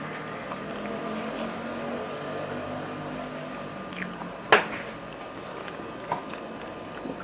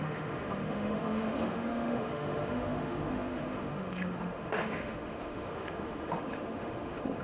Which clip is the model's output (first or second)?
second